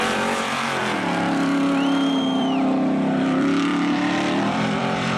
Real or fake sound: fake